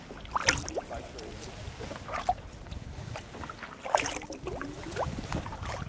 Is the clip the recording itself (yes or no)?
yes